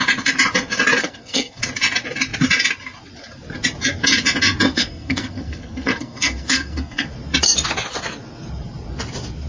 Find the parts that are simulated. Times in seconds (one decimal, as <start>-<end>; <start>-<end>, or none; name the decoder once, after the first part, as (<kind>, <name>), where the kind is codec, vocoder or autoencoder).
1.0-1.6 (codec, SNAC); 4.7-7.1